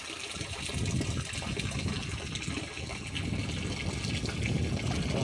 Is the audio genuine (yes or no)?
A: yes